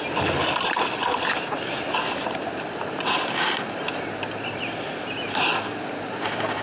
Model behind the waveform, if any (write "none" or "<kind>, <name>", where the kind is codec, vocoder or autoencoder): none